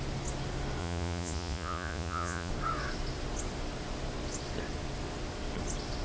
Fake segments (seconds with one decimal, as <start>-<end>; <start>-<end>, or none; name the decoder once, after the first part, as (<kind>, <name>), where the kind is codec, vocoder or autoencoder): 0.8-2.5 (vocoder, Vocos)